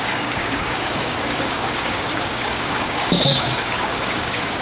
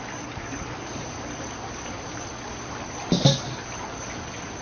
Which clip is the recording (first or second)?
second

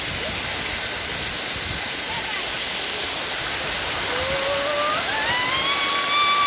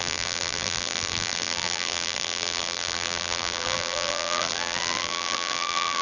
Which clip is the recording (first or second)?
first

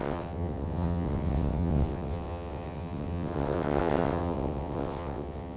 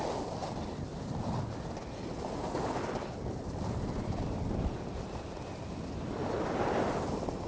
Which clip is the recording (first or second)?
second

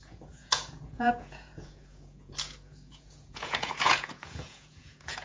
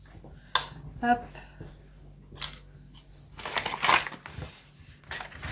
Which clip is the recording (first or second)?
second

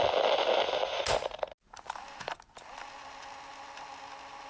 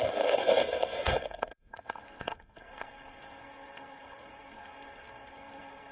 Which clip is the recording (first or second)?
first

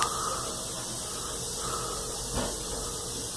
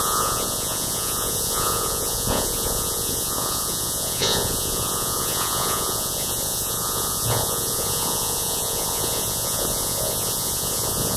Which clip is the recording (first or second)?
first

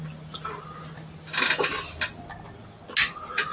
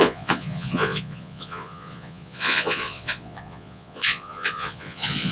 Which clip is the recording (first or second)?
first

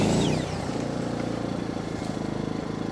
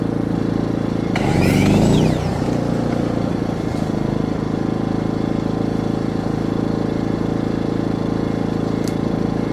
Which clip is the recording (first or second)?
second